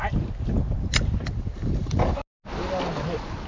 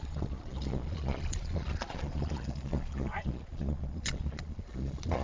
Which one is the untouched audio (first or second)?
first